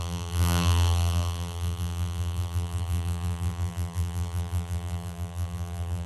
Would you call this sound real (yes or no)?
no